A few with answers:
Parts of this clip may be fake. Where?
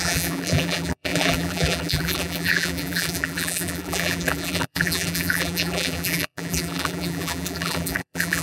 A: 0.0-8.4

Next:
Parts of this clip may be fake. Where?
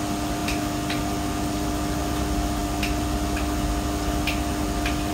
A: none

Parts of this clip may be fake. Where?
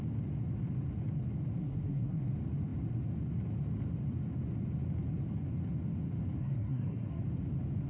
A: 1.6-2.3; 6.4-7.2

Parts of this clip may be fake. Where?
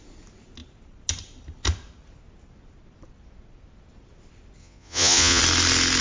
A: 4.6-5.4